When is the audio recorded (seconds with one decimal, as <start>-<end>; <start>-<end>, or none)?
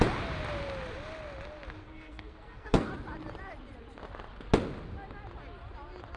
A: 0.0-1.8; 2.9-6.2